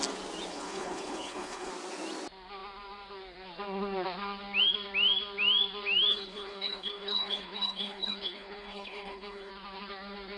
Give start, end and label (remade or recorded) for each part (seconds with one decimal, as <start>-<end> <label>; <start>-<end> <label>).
0.0-0.5 recorded; 0.5-1.7 remade; 1.7-6.1 recorded; 6.1-9.5 remade; 9.5-10.4 recorded